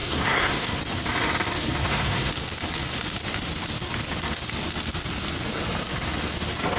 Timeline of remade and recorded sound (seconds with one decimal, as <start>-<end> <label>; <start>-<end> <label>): 0.0-0.8 remade; 0.8-1.8 recorded; 1.8-2.3 remade; 2.3-6.8 recorded